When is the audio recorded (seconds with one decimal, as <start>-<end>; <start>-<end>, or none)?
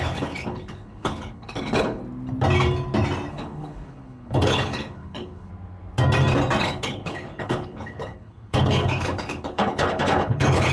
2.0-3.3; 5.5-6.6